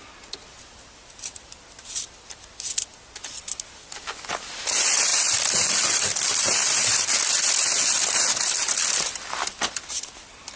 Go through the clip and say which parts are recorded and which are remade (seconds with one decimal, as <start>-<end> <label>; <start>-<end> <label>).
0.0-10.6 recorded